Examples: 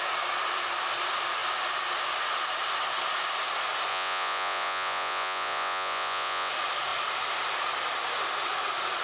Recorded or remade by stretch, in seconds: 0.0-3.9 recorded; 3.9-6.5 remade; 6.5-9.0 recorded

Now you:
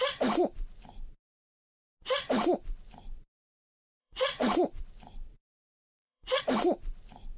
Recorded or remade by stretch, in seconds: 0.0-4.0 recorded; 4.0-4.8 remade; 4.8-5.3 recorded; 5.3-6.4 remade; 6.4-7.4 recorded

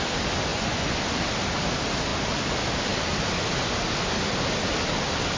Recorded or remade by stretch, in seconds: 0.0-0.5 recorded; 0.5-1.0 remade; 1.0-5.4 recorded

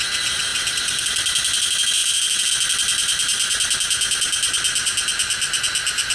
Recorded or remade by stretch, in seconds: 0.0-6.1 recorded

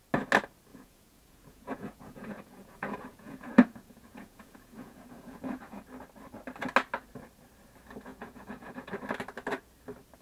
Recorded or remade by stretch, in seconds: 0.0-0.7 recorded; 0.7-5.8 remade; 5.8-8.1 recorded; 8.1-8.9 remade; 8.9-10.2 recorded

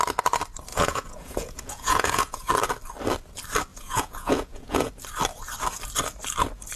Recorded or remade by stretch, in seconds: 0.0-0.7 recorded; 0.7-2.5 remade; 2.5-3.7 recorded; 3.7-4.9 remade; 4.9-6.8 recorded